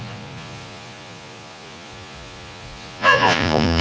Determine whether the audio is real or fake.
fake